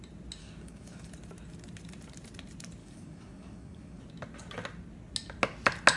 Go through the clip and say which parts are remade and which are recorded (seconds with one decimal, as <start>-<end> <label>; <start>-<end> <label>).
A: 0.0-0.4 recorded; 0.4-1.1 remade; 1.1-2.8 recorded; 2.8-4.0 remade; 4.0-6.0 recorded